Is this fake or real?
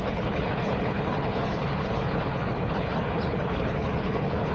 fake